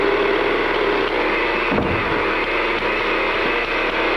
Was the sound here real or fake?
real